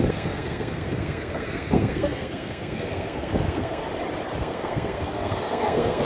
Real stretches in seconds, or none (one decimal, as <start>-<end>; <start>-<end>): 3.8-4.4